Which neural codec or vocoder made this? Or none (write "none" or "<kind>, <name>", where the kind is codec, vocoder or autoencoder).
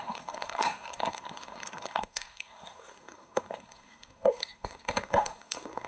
codec, SNAC